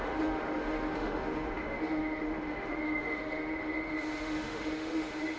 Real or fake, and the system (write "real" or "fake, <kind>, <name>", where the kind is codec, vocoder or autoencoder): fake, autoencoder, DAC-VAE